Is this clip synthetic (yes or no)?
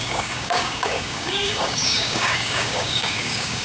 yes